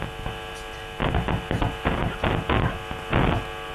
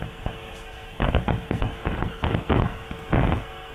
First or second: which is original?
first